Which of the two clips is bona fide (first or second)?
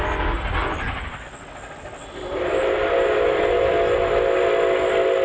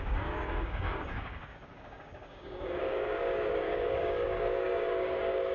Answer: first